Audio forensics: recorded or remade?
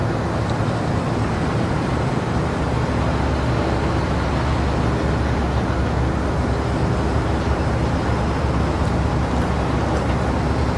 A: recorded